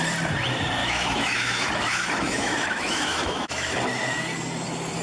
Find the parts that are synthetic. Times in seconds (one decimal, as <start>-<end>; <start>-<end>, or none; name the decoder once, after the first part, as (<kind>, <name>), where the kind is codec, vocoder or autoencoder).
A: 0.8-3.7 (autoencoder, DAC-VAE)